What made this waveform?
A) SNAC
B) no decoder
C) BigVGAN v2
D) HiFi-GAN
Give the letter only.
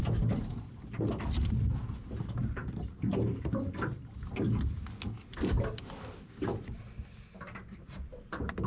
B